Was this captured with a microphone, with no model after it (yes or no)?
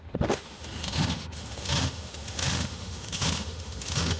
no